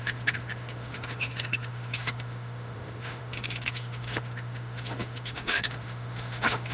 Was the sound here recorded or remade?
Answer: remade